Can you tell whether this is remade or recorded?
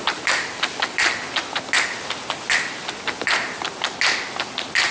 recorded